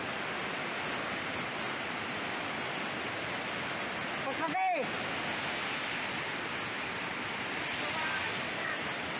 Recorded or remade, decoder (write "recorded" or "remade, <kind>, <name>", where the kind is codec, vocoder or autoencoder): recorded